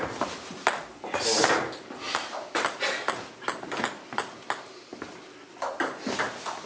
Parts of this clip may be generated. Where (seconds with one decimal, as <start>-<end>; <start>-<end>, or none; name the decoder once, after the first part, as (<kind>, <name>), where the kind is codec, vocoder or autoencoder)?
none